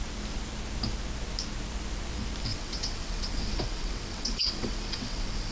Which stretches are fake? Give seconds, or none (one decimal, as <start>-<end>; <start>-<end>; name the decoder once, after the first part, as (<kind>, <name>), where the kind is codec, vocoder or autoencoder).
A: 2.5-5.5 (vocoder, WaveNeXt)